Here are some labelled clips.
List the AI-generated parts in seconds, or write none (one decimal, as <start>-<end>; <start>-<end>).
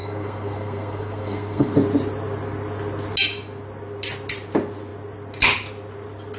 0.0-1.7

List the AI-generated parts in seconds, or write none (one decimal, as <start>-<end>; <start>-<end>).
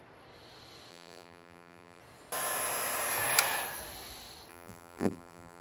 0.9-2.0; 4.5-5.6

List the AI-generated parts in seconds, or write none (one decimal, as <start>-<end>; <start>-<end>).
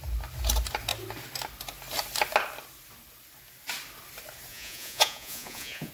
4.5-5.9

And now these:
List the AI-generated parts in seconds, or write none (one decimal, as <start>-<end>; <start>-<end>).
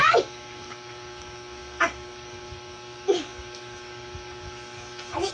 0.0-5.3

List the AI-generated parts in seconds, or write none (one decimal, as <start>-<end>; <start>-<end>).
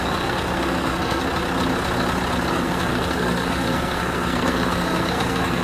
0.0-1.2; 2.5-5.6